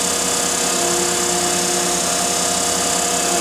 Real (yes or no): yes